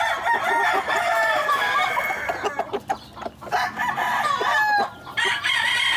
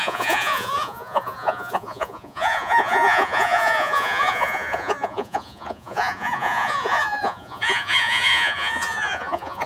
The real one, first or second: first